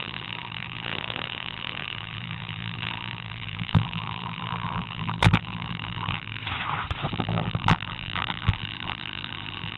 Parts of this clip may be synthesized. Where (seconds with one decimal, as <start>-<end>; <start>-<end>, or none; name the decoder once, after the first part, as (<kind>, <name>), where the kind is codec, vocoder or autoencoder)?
0.0-6.4 (vocoder, BigVGAN v2); 7.1-9.8